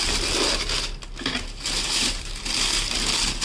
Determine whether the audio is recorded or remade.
recorded